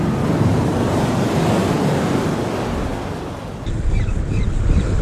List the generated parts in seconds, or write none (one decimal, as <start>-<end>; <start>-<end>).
0.5-1.2; 1.6-2.4